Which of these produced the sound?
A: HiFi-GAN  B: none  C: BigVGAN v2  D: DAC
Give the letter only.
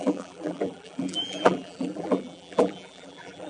C